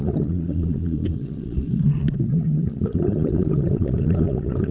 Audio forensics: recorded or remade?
remade